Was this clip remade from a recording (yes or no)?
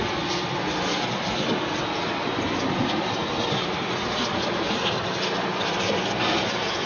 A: yes